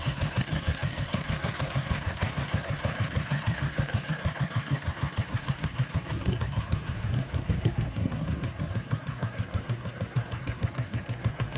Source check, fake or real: fake